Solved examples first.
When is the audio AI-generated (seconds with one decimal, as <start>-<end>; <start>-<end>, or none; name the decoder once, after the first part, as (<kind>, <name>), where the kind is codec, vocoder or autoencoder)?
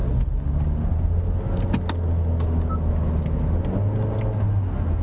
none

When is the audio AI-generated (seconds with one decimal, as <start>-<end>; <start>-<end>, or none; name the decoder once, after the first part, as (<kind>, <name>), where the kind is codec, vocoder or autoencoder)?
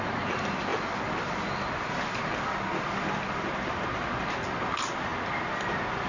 none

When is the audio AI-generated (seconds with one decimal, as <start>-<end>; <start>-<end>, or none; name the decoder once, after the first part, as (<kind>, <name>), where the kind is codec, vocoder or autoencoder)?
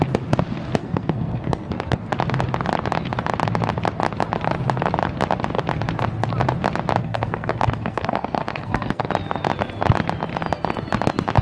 0.8-2.1 (codec, SNAC); 7.0-9.1